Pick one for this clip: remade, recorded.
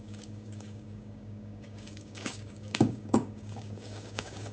remade